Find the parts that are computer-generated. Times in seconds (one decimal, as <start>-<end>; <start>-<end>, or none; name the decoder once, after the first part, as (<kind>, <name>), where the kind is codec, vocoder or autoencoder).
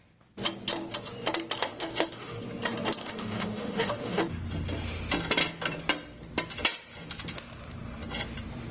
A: 1.6-2.4 (autoencoder, DAC-VAE); 3.0-4.2